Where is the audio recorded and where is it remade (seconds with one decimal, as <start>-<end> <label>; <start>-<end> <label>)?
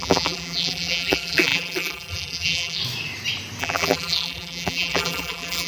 0.0-2.8 remade; 2.8-3.6 recorded; 3.6-5.7 remade